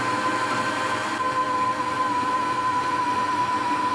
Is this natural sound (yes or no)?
yes